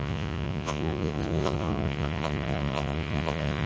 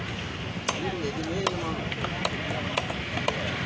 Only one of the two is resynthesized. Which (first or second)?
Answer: first